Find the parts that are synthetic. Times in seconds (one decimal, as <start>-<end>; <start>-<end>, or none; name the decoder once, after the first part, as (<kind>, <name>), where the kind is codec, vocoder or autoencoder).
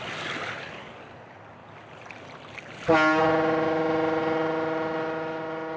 none